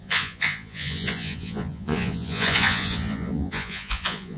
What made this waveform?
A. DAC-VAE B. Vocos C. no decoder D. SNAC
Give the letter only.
B